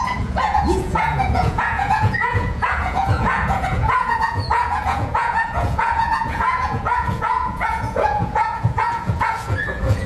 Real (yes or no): no